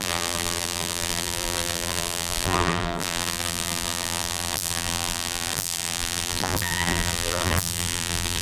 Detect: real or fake fake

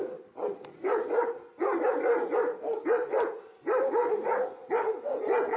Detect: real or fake real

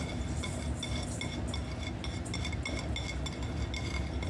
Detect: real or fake real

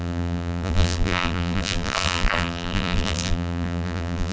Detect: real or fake fake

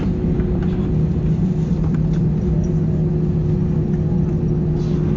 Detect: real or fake real